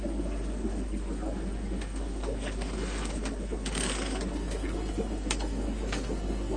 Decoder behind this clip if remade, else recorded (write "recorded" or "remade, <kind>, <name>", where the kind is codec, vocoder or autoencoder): remade, codec, SNAC